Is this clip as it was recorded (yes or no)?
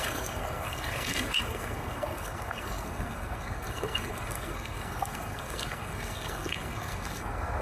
no